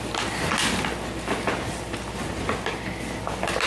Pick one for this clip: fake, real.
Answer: real